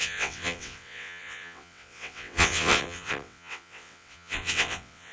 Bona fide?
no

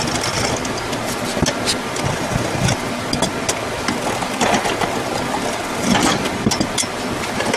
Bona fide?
yes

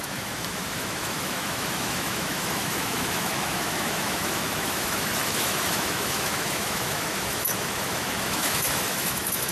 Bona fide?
no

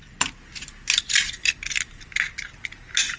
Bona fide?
yes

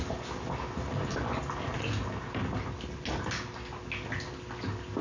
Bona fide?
yes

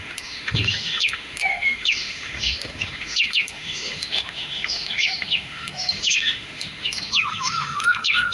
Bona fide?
no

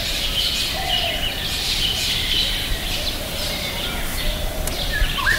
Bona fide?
yes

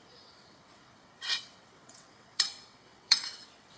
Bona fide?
no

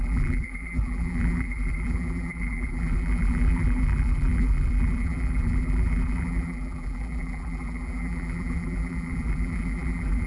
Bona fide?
no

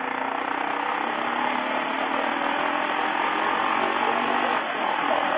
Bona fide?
yes